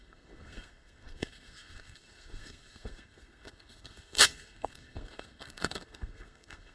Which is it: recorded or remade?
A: remade